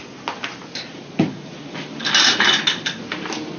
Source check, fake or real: real